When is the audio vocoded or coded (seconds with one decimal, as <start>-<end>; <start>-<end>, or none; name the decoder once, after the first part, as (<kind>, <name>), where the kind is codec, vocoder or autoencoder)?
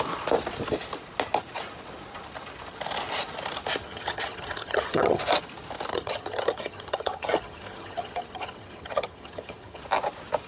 3.8-5.2 (vocoder, HiFi-GAN); 5.9-9.8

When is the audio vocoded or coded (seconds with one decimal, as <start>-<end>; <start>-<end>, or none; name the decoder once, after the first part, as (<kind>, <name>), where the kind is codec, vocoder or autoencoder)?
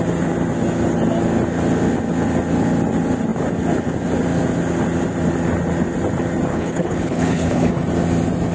6.5-7.7 (codec, HILCodec)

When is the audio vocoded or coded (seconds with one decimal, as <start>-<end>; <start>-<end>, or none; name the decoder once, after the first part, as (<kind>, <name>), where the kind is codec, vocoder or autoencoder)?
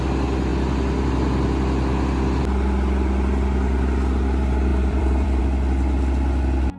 4.7-5.4 (vocoder, BigVGAN v2)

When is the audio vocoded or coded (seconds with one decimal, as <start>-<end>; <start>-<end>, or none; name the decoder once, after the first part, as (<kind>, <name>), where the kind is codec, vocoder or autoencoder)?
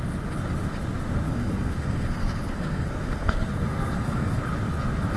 1.3-4.4 (codec, SNAC)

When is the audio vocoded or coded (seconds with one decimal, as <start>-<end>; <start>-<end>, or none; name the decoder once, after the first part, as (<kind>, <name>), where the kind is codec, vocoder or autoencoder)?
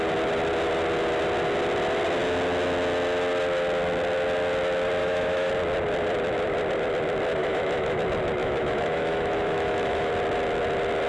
5.0-5.5 (autoencoder, DAC-VAE); 7.4-8.0; 8.4-10.1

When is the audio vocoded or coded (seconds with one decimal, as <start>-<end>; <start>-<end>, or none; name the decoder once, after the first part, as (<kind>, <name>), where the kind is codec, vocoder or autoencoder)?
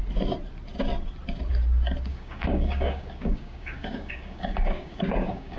2.1-5.6 (codec, DAC)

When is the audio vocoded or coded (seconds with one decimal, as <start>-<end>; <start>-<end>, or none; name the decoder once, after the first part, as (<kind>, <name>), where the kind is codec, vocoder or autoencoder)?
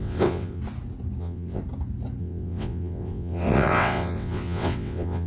0.0-0.6 (vocoder, WaveNeXt); 1.2-1.6; 2.2-5.3